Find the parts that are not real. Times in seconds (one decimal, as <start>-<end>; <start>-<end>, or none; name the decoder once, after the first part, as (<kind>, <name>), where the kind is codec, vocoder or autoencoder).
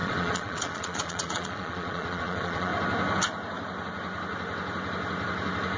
0.0-2.7 (vocoder, Vocos)